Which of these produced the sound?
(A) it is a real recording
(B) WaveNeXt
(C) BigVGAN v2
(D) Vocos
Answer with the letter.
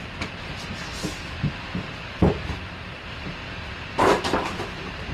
C